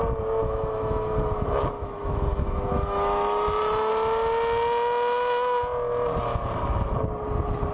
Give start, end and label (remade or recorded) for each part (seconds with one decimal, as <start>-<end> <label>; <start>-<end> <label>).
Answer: 0.0-0.4 recorded; 0.4-3.9 remade; 3.9-7.7 recorded